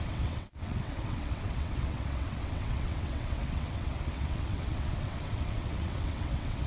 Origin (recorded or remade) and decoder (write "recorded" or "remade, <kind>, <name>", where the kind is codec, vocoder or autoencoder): remade, vocoder, WaveNeXt